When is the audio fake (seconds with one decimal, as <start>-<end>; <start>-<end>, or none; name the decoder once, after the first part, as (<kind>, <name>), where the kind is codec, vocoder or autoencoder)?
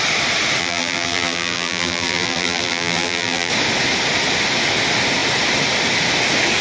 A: 0.6-3.5 (vocoder, BigVGAN v2)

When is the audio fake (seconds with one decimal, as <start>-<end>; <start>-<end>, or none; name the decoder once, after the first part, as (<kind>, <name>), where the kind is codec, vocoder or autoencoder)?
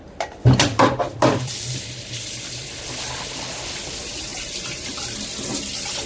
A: 0.0-2.9 (vocoder, BigVGAN v2); 4.3-4.9